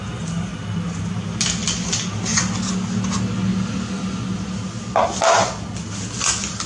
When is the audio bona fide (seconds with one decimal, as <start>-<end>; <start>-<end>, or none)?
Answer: 0.0-6.7